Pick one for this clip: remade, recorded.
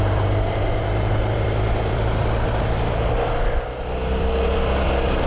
remade